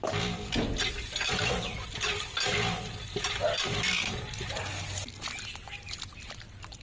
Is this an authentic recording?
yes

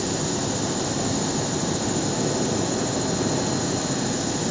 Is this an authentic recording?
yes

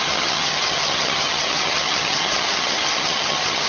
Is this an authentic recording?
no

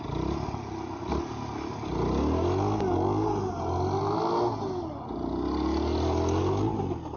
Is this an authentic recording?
yes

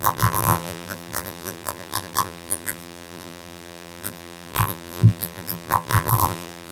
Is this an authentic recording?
no